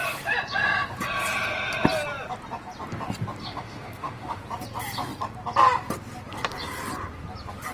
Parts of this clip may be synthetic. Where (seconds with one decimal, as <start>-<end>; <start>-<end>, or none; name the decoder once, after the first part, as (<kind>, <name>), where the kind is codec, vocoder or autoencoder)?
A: 3.4-4.4 (autoencoder, DAC-VAE)